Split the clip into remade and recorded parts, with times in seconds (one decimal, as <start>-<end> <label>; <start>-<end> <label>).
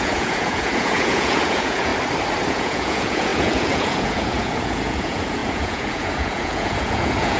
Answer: 0.0-1.9 remade; 1.9-2.5 recorded; 2.5-7.4 remade